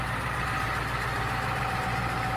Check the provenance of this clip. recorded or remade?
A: remade